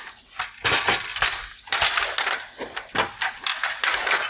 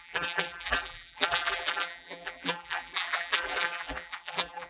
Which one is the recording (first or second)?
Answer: first